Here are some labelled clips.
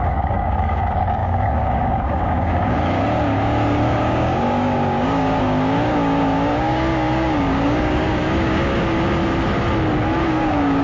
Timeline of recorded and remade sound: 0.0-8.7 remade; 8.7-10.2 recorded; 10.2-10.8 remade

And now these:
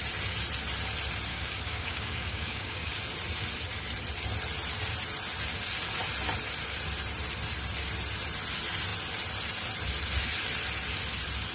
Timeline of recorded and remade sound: 0.0-1.3 recorded; 1.3-3.0 remade; 3.0-11.5 recorded

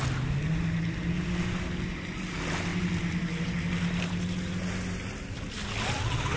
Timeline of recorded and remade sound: 0.0-6.4 recorded

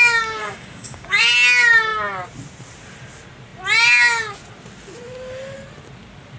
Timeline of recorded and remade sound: 0.0-0.4 recorded; 0.4-1.2 remade; 1.2-6.4 recorded

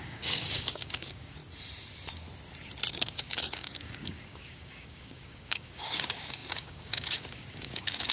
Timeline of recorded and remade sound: 0.0-1.4 remade; 1.4-2.9 recorded; 2.9-8.1 remade